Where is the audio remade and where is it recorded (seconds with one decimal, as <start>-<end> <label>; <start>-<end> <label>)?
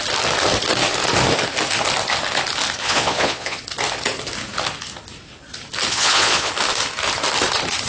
0.0-2.8 recorded; 2.8-3.6 remade; 3.6-5.9 recorded; 5.9-6.5 remade; 6.5-7.9 recorded